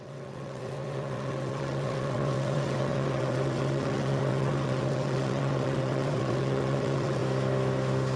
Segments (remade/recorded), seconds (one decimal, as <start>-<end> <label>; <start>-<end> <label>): 0.0-7.2 remade; 7.2-8.2 recorded